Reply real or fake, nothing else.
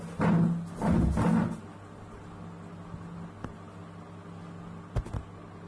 real